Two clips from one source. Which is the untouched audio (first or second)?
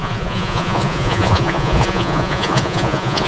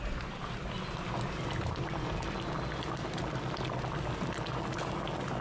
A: second